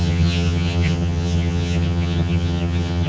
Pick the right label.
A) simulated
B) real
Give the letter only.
A